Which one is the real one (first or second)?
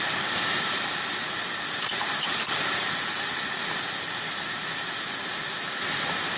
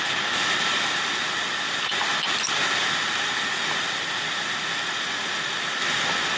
second